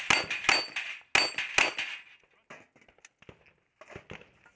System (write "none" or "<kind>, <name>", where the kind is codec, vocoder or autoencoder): none